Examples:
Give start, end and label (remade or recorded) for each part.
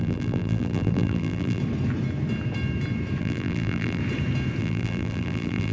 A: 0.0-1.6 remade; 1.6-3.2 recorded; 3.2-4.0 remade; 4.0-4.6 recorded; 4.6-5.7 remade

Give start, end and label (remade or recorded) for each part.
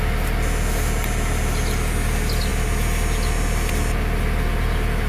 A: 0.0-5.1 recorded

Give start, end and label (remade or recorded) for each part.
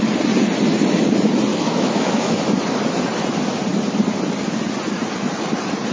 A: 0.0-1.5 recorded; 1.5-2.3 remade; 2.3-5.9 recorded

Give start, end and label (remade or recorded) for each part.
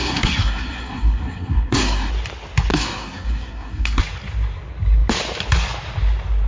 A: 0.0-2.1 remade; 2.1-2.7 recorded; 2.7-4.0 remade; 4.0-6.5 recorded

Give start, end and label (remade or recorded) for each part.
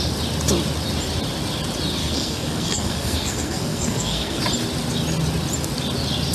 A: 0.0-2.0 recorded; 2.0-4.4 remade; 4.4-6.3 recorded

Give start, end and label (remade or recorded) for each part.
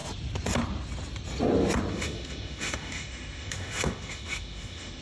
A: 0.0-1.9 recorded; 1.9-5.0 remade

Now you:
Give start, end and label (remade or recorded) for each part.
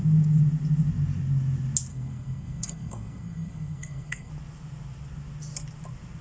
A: 0.0-1.9 recorded; 1.9-4.3 remade; 4.3-6.2 recorded